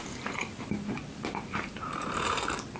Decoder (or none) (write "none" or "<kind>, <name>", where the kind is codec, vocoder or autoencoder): none